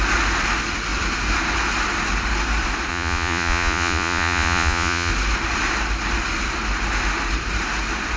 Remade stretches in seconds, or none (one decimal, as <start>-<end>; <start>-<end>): 2.9-5.1